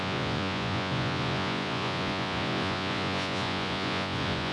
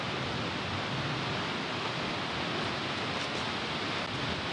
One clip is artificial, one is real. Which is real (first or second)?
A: second